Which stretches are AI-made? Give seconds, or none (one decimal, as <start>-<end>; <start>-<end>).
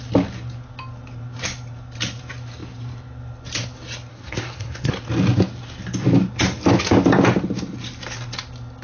4.1-4.9